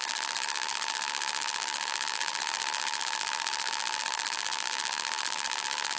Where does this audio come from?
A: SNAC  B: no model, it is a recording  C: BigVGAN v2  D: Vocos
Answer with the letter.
C